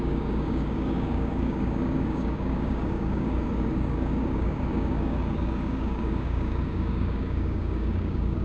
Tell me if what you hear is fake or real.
fake